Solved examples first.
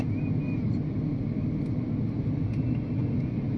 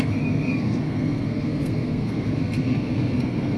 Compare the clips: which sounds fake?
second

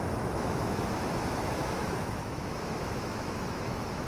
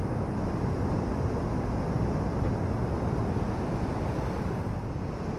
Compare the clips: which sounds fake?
first